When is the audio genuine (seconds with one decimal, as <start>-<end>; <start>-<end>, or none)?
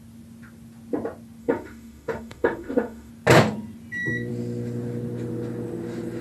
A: 0.0-1.4; 3.1-6.2